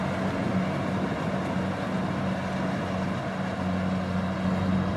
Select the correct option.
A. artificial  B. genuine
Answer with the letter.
B